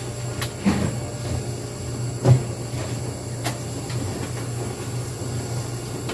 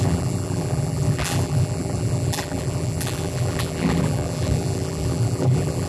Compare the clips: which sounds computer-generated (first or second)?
second